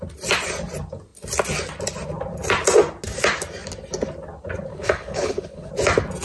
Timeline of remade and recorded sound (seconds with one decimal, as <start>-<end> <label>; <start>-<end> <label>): 0.0-4.7 recorded; 4.7-5.7 remade; 5.7-6.2 recorded